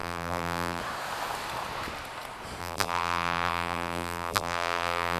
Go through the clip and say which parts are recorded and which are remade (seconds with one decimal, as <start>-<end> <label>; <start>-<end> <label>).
0.0-0.8 remade; 0.8-2.6 recorded; 2.6-5.2 remade